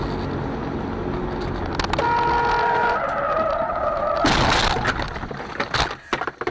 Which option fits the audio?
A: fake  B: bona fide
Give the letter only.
B